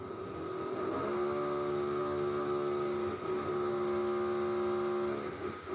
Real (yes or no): yes